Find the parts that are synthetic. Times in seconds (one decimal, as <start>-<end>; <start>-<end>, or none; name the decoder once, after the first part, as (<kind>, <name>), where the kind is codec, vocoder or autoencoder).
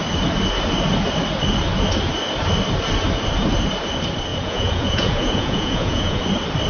4.3-6.2 (vocoder, Vocos)